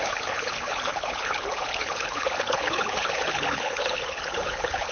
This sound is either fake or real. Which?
fake